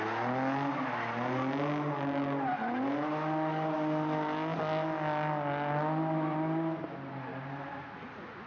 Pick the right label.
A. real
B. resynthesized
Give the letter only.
A